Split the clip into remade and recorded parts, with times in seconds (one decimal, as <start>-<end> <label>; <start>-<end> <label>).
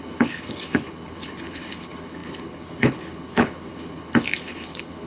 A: 0.0-5.1 remade